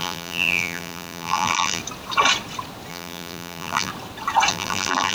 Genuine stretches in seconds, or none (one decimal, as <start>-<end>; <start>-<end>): 1.8-2.9; 3.9-4.5